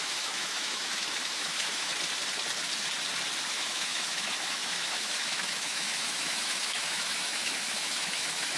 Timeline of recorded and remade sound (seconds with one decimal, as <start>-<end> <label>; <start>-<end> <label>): 0.0-1.9 remade; 1.9-3.5 recorded; 3.5-8.6 remade